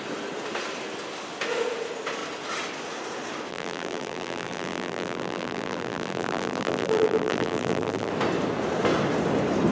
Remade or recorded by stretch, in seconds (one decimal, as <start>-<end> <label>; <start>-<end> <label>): 0.0-3.5 recorded; 3.5-8.1 remade; 8.1-9.7 recorded